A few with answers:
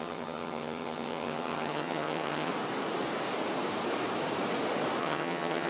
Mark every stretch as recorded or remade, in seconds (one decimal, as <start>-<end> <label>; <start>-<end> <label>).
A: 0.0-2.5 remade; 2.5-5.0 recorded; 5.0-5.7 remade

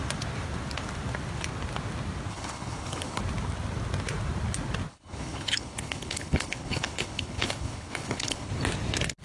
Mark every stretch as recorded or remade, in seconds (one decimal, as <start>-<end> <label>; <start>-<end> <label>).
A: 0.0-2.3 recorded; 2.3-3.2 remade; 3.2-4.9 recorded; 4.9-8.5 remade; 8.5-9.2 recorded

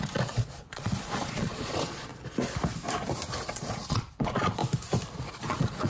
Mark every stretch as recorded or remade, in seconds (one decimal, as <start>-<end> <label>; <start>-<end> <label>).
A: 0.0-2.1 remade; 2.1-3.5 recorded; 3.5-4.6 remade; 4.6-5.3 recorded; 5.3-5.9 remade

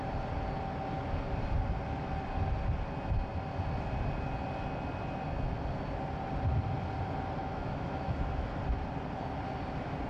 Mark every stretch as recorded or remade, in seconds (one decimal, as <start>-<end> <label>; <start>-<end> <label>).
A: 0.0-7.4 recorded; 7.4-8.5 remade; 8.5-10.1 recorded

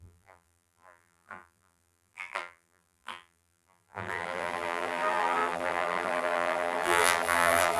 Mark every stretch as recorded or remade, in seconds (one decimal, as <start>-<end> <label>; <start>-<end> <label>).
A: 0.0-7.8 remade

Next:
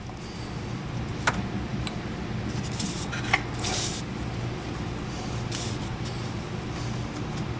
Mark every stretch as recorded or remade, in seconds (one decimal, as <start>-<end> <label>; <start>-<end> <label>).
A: 0.0-7.6 recorded